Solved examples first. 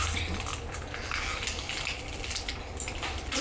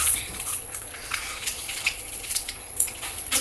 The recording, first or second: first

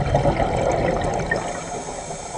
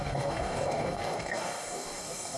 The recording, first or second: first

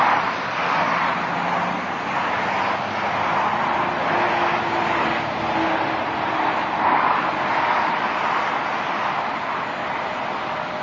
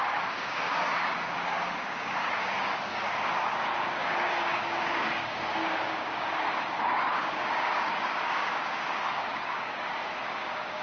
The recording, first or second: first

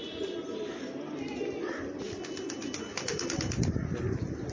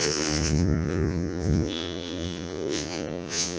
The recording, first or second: first